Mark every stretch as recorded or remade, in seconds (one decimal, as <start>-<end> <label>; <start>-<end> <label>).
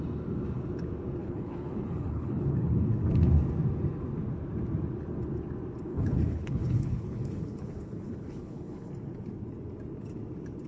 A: 0.0-1.2 recorded; 1.2-2.7 remade; 2.7-5.9 recorded; 5.9-8.9 remade; 8.9-10.7 recorded